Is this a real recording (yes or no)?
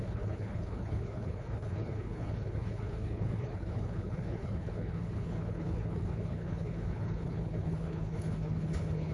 no